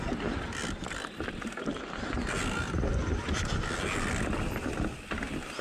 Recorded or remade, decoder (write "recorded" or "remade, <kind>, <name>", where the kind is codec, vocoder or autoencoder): recorded